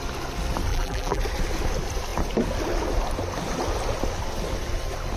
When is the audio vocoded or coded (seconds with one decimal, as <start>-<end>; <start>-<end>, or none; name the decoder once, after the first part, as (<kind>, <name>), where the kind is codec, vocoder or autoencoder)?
0.7-1.2 (vocoder, BigVGAN v2)